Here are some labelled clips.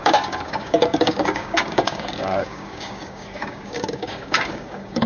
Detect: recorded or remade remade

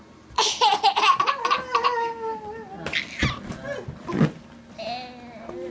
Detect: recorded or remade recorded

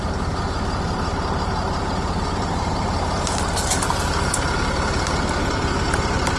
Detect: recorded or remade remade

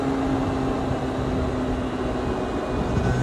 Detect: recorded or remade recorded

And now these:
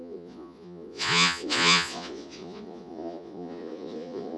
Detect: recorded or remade remade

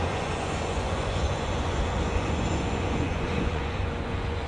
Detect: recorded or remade remade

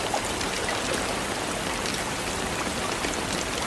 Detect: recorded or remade recorded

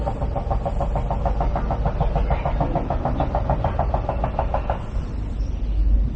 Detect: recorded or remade recorded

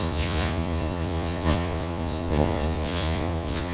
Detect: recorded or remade remade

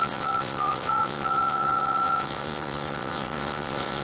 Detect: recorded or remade remade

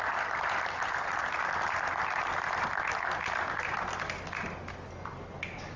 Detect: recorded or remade recorded